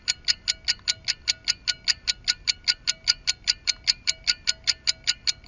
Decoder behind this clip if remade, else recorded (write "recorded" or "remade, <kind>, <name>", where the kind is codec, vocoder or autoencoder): recorded